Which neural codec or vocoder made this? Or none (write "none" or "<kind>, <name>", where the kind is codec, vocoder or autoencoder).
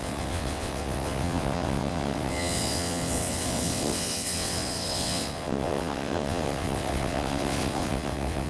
vocoder, WaveNeXt